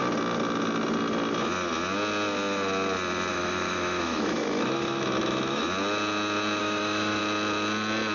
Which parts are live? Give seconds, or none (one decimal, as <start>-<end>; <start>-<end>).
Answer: 0.0-3.3; 5.6-6.6; 7.2-8.1